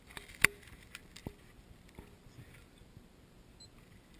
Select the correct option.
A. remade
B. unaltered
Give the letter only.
B